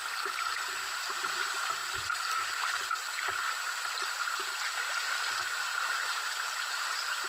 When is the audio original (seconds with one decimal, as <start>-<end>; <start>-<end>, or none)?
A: 0.0-7.3